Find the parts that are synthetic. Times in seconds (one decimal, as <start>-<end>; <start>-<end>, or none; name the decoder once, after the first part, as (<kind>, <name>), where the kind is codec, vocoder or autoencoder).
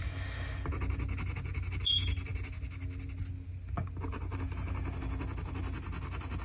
none